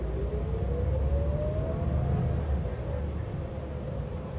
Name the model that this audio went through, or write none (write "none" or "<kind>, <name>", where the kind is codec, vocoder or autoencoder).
none